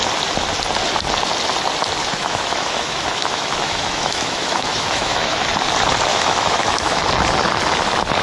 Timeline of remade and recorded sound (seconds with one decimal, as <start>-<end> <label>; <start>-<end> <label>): 0.0-2.0 recorded; 2.0-5.5 remade; 5.5-6.1 recorded; 6.1-7.0 remade; 7.0-8.2 recorded